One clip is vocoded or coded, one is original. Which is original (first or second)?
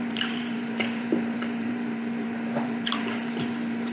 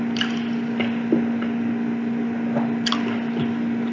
second